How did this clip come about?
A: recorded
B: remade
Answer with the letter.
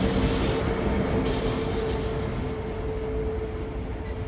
A